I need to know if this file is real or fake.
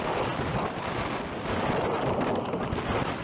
real